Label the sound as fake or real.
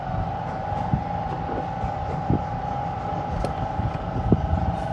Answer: fake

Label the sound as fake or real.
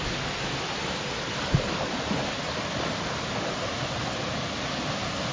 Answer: real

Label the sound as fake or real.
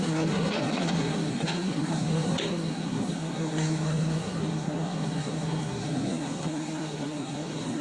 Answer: fake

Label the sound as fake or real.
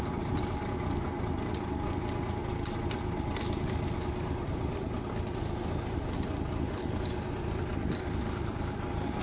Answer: real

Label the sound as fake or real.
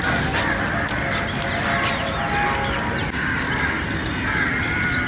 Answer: real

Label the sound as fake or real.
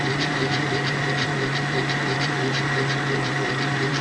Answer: fake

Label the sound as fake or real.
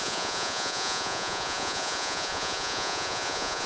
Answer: fake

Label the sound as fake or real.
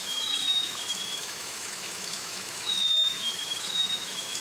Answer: fake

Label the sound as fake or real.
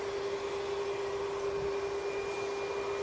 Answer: real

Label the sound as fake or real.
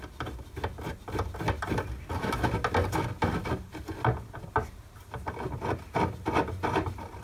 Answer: real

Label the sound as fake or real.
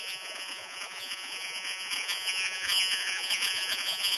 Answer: fake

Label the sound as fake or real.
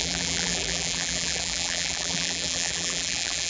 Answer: fake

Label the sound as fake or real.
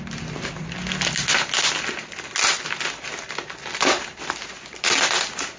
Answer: real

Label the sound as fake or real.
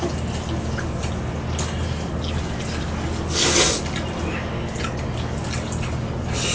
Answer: real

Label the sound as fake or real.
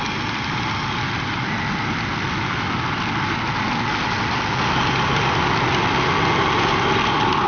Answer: real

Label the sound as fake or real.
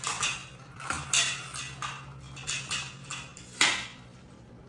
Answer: real